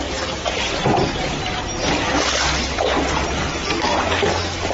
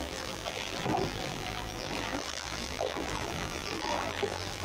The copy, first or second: second